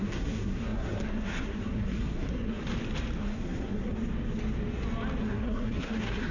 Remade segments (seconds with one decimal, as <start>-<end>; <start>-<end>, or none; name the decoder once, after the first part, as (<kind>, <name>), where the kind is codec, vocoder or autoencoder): 0.0-2.6 (codec, SNAC); 3.2-4.0; 5.2-6.3